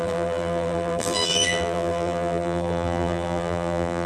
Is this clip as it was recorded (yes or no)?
no